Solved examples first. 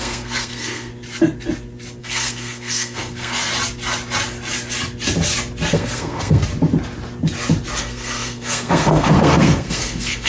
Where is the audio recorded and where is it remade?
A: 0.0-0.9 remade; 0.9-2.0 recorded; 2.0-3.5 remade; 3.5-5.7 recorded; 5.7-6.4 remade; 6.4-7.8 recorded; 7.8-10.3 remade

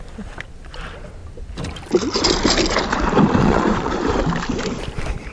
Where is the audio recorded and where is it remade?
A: 0.0-3.4 recorded; 3.4-4.2 remade; 4.2-5.3 recorded

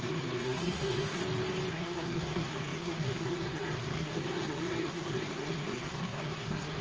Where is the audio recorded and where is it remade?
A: 0.0-1.2 remade; 1.2-1.7 recorded; 1.7-6.8 remade

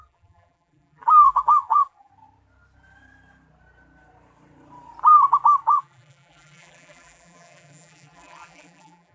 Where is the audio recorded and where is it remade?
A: 0.0-2.1 remade; 2.1-5.7 recorded; 5.7-9.1 remade

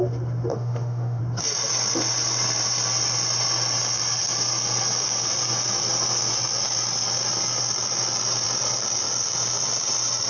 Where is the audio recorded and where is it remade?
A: 0.0-0.5 recorded; 0.5-1.2 remade; 1.2-10.3 recorded

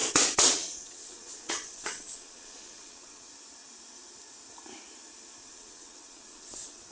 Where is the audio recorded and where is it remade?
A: 0.0-3.3 remade; 3.3-5.4 recorded; 5.4-6.9 remade